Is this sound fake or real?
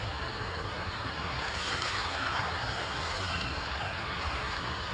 fake